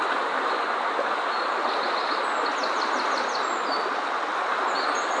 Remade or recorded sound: recorded